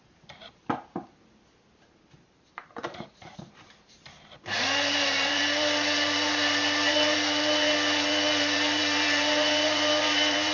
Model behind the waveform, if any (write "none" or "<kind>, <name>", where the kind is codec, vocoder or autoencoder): vocoder, BigVGAN v2